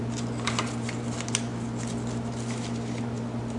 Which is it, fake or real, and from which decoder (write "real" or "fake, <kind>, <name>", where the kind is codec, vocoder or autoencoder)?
real